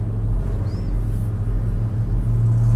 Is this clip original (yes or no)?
yes